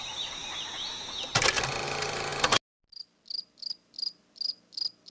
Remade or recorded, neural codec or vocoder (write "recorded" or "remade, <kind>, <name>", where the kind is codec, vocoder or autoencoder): recorded